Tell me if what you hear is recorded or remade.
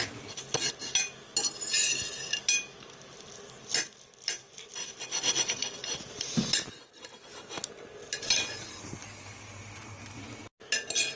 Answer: recorded